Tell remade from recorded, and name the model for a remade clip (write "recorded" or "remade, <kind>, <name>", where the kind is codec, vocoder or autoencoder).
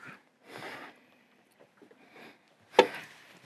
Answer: recorded